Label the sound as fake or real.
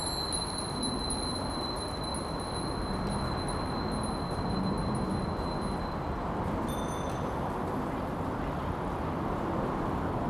real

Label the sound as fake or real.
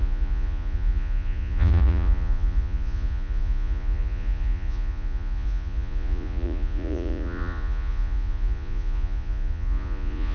fake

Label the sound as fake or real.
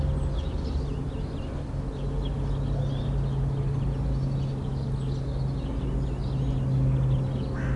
real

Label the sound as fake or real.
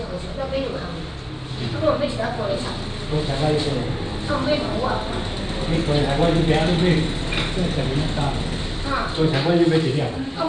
real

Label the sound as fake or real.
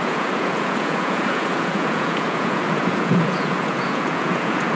fake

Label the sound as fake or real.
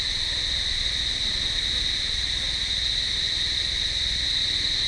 real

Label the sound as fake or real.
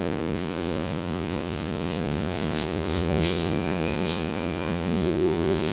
fake